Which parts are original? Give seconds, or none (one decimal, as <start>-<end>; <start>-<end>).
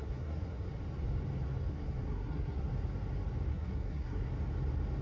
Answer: 0.7-1.7; 2.7-3.5; 4.3-5.0